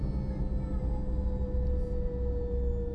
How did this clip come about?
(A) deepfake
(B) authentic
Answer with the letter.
B